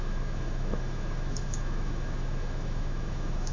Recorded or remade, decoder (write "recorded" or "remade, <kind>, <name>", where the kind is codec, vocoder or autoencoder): remade, autoencoder, DAC-VAE